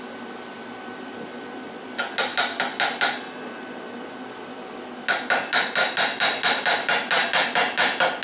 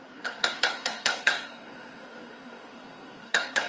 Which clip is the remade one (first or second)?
second